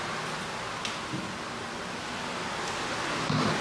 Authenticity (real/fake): real